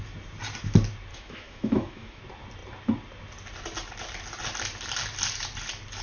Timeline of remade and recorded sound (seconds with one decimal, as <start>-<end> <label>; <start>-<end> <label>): 0.0-1.1 recorded; 1.1-2.2 remade; 2.2-6.0 recorded